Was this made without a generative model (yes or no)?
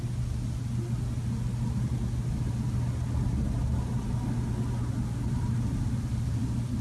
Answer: yes